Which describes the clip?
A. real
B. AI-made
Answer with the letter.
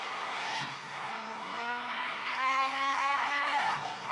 B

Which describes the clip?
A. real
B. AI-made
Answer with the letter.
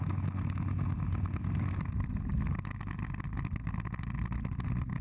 A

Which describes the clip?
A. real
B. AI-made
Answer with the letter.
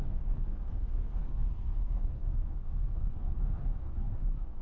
B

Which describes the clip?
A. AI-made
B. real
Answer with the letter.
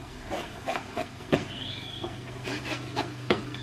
A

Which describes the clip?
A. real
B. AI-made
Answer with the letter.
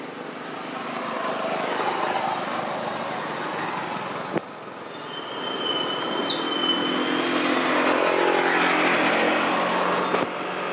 A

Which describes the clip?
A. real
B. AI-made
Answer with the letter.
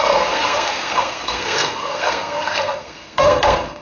B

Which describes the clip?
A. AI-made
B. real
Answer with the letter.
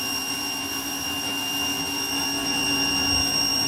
B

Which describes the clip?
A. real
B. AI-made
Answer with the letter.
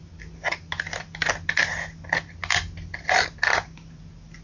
A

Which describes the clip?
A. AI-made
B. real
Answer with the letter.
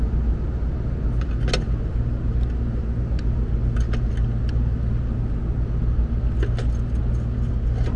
B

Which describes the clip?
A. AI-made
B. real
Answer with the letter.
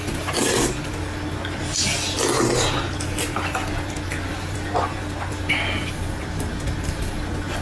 B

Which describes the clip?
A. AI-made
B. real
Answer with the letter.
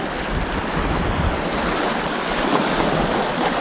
B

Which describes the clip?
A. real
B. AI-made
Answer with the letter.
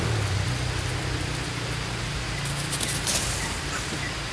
A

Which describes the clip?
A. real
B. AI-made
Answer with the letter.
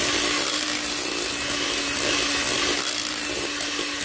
A